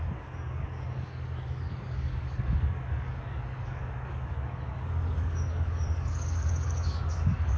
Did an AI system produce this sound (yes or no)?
yes